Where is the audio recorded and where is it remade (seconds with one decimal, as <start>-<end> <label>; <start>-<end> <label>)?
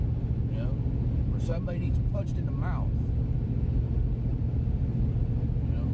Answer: 0.0-1.5 recorded; 1.5-2.3 remade; 2.3-4.3 recorded; 4.3-5.4 remade; 5.4-5.9 recorded